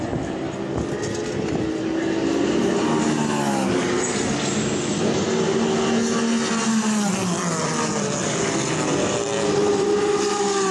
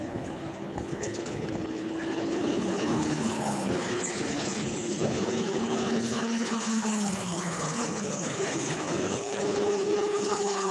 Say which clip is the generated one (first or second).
second